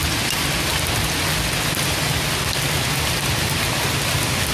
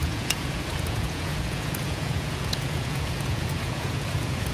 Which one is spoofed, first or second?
second